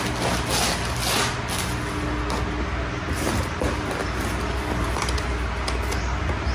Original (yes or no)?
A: yes